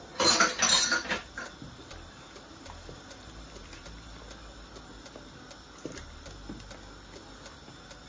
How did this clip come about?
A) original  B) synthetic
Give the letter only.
A